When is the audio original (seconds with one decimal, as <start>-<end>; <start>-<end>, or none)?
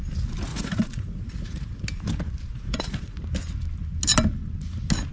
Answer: 0.0-0.5; 1.8-2.5; 3.2-5.1